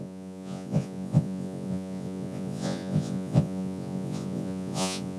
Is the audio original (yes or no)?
no